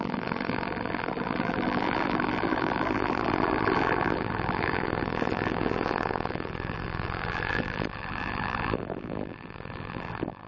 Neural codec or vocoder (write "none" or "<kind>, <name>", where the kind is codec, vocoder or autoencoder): vocoder, BigVGAN v2